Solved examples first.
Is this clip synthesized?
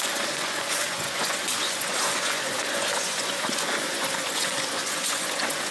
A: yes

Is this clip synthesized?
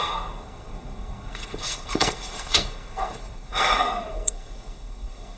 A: yes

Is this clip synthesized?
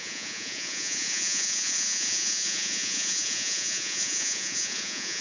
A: yes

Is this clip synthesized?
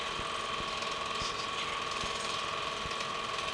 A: no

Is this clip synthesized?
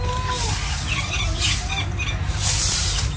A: no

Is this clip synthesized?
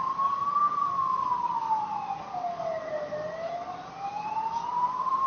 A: no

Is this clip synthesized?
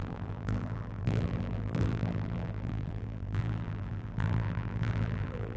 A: yes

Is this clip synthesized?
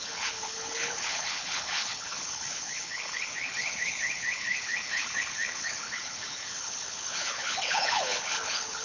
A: yes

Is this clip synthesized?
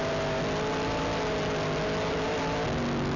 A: no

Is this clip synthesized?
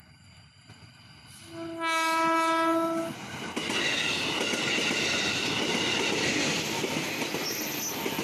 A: no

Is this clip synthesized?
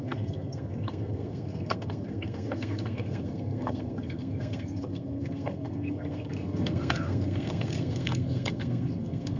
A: yes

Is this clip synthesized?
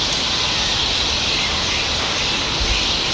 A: no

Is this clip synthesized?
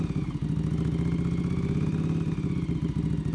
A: no